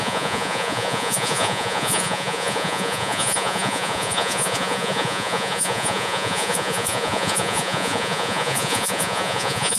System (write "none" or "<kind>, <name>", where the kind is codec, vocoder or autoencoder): vocoder, Vocos